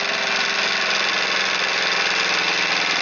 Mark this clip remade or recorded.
recorded